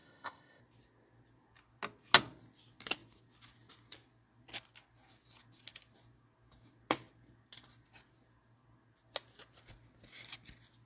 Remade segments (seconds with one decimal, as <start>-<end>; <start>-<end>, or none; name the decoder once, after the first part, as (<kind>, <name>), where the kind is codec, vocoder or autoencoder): 0.0-0.6 (codec, ZipCodec)